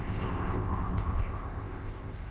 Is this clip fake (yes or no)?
yes